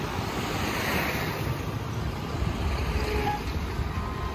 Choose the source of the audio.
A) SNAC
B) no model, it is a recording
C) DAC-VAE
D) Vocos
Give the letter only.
B